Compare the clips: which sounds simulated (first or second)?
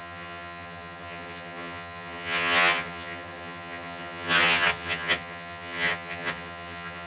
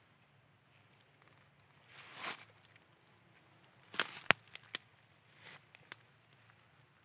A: first